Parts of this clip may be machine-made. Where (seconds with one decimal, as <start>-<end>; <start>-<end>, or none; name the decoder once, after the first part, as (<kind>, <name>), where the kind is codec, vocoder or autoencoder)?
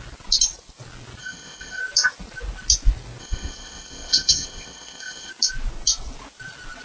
1.2-1.8 (codec, ZipCodec); 3.2-5.3